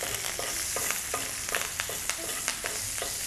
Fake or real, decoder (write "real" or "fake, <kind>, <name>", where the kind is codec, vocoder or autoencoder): real